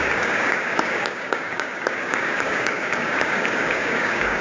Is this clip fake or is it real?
fake